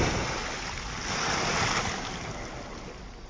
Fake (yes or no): no